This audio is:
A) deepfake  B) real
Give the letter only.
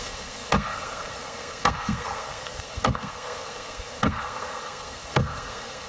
A